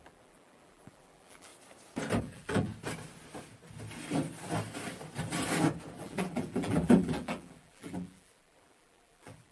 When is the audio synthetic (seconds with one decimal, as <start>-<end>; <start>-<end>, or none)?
0.0-1.5; 2.2-2.7; 6.0-9.5

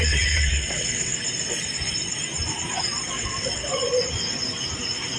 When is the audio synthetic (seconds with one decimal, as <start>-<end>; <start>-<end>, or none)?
0.0-1.1; 3.1-3.7